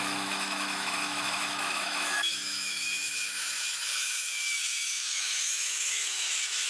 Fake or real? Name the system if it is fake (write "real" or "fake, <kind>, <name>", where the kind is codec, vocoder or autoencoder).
fake, autoencoder, DAC-VAE